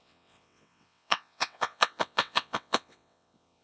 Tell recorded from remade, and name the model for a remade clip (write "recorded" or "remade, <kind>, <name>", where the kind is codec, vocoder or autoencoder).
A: remade, vocoder, WaveNeXt